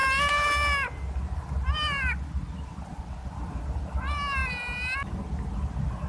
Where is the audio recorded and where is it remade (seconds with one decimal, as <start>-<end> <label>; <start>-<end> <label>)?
0.0-6.1 recorded